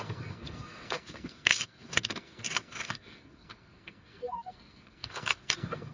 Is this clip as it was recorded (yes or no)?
no